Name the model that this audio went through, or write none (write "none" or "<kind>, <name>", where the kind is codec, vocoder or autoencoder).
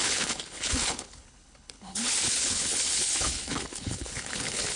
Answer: codec, HILCodec